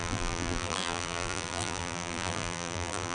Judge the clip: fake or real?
fake